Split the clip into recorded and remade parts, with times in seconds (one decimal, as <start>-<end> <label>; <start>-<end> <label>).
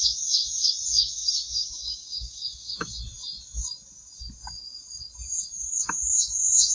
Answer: 0.0-0.9 recorded; 0.9-3.0 remade; 3.0-6.7 recorded